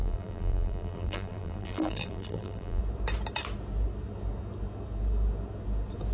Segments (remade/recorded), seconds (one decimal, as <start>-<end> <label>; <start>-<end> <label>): 0.0-2.8 remade; 2.8-6.1 recorded